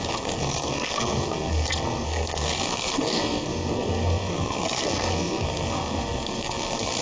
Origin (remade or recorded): remade